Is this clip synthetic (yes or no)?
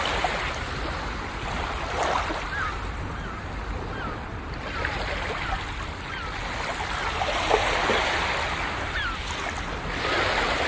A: no